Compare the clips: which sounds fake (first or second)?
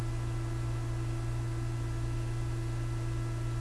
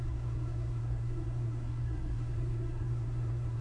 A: second